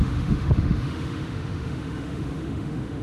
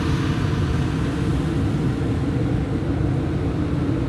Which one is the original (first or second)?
second